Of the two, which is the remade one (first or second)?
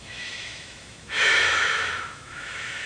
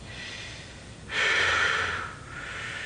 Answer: first